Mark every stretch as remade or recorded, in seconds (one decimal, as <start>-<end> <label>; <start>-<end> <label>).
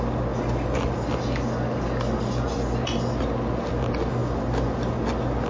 0.0-5.5 recorded